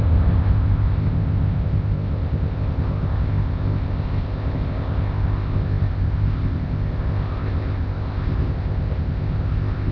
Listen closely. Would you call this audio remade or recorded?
remade